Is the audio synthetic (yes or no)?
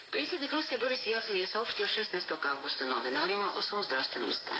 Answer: yes